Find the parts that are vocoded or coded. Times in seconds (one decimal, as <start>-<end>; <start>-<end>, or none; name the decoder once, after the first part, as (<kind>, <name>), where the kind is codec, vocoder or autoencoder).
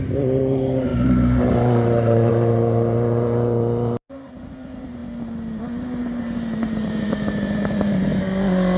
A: 0.0-5.0 (vocoder, BigVGAN v2); 6.0-8.1